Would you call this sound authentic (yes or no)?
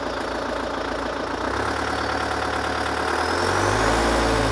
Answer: yes